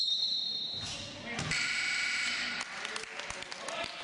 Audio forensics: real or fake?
real